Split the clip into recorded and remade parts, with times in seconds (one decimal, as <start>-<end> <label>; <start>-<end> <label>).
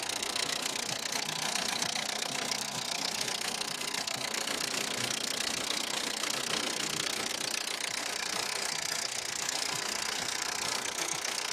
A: 0.0-7.3 remade; 7.3-8.0 recorded; 8.0-11.5 remade